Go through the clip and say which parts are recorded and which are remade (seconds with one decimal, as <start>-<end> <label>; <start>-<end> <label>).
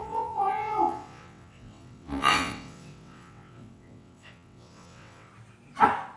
0.0-5.3 remade; 5.3-6.2 recorded